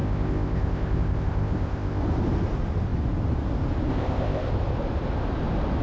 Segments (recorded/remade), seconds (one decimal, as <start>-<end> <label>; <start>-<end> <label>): 0.0-2.0 remade; 2.0-3.9 recorded; 3.9-4.5 remade; 4.5-5.8 recorded